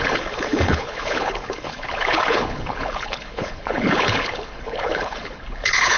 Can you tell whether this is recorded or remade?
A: remade